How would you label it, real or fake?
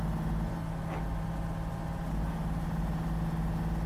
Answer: real